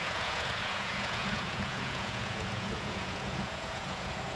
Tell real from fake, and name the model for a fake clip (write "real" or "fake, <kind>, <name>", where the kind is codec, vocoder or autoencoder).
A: fake, vocoder, Vocos